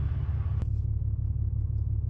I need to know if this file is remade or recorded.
recorded